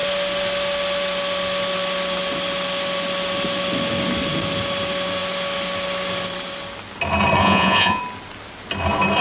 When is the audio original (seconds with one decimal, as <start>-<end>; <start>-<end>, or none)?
0.0-7.4; 8.0-9.2